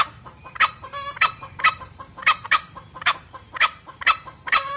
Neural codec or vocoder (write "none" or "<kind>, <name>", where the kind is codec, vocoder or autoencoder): vocoder, BigVGAN v2